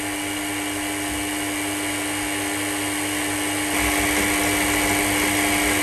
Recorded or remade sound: recorded